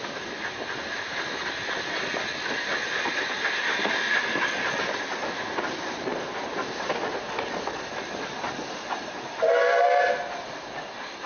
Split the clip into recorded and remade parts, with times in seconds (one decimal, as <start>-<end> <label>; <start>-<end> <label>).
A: 0.0-11.3 recorded